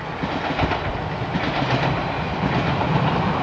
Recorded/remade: recorded